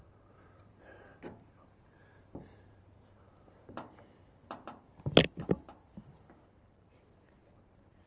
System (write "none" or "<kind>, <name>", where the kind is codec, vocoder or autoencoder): vocoder, BigVGAN v2